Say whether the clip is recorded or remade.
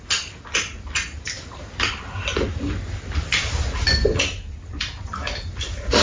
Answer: recorded